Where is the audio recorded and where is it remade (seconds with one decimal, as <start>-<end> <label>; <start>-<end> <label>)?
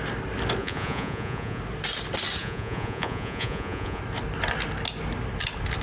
0.0-0.6 recorded; 0.6-1.6 remade; 1.6-2.4 recorded; 2.4-4.0 remade; 4.0-5.8 recorded